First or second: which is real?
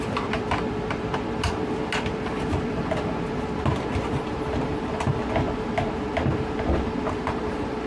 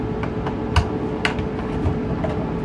second